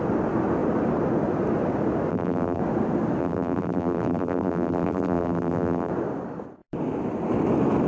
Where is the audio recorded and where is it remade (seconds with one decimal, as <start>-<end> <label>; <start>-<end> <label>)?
0.0-2.1 recorded; 2.1-2.6 remade; 2.6-3.2 recorded; 3.2-5.9 remade; 5.9-7.9 recorded